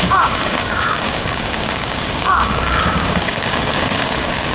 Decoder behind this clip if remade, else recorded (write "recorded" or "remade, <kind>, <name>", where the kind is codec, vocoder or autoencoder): remade, codec, DAC